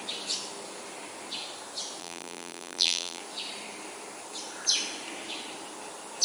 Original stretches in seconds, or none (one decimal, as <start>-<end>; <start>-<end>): 0.0-2.0; 3.2-6.2